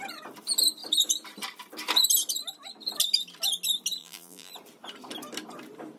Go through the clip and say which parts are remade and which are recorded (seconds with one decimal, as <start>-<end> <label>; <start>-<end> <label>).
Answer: 0.0-4.0 recorded; 4.0-4.5 remade; 4.5-6.0 recorded